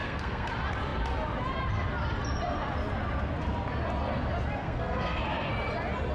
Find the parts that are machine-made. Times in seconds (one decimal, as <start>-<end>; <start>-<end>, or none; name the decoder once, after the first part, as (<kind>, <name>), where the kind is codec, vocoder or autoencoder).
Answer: 0.0-0.5 (codec, SNAC); 4.6-5.5